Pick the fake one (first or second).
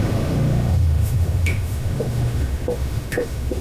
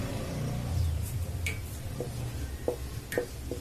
first